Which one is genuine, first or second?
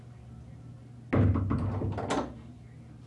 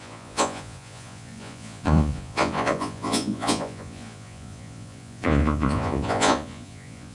first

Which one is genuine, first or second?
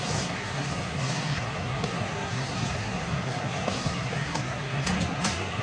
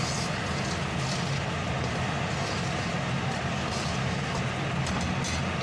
second